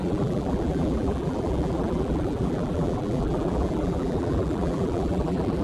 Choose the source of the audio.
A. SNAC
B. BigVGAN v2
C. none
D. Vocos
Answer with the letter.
B